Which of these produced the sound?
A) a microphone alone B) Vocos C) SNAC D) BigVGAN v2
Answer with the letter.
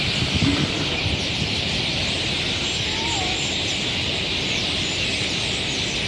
D